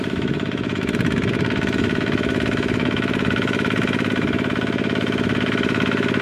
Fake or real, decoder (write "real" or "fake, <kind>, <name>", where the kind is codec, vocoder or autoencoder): fake, autoencoder, DAC-VAE